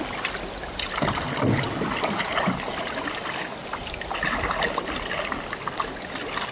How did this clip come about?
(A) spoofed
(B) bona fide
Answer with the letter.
B